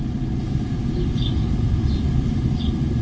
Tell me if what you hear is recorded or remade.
recorded